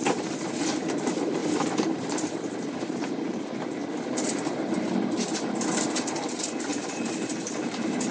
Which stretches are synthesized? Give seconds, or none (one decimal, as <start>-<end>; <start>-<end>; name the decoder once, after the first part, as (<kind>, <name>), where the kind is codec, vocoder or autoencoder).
0.0-8.1 (vocoder, BigVGAN v2)